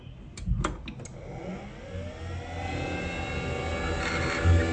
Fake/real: real